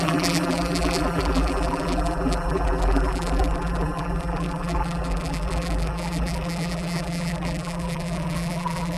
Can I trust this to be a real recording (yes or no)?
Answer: no